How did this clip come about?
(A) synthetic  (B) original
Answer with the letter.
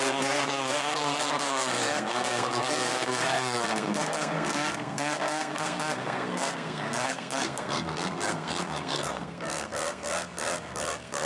A